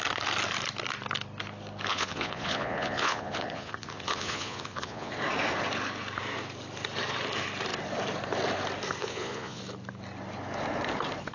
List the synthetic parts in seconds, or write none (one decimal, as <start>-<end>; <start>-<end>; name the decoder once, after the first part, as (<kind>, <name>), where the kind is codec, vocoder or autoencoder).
1.9-5.1 (vocoder, Vocos); 9.0-9.6